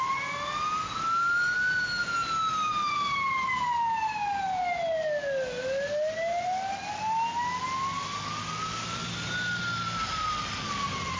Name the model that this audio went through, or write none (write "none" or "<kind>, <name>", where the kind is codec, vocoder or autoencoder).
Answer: none